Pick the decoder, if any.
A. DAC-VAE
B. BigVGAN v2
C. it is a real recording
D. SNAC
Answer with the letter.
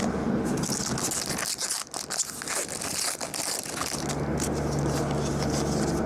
C